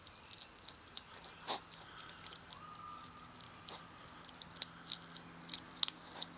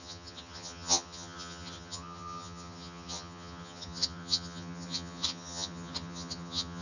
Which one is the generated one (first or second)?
second